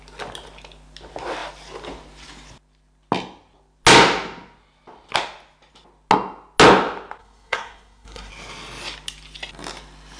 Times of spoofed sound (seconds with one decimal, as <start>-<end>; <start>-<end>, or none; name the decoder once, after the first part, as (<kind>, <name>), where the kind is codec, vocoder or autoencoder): 7.2-8.3 (codec, SNAC)